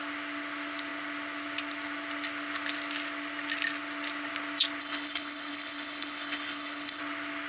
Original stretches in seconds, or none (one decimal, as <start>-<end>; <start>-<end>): 0.0-4.8; 7.0-7.5